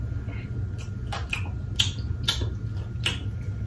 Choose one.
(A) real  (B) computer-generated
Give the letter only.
A